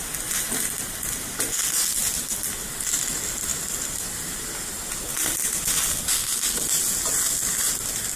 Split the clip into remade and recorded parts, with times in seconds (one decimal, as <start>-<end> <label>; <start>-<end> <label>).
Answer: 0.0-2.0 recorded; 2.0-3.0 remade; 3.0-8.2 recorded